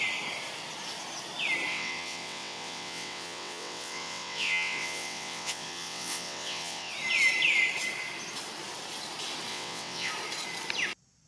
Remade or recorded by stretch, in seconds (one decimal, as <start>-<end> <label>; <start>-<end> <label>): 0.0-1.7 recorded; 1.7-6.9 remade; 6.9-9.5 recorded; 9.5-10.1 remade; 10.1-11.3 recorded